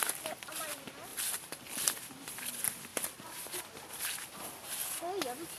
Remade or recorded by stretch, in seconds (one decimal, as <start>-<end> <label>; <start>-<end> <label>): 0.0-1.1 recorded; 1.1-2.3 remade; 2.3-2.9 recorded; 2.9-3.6 remade; 3.6-5.6 recorded